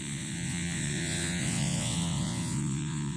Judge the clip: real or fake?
fake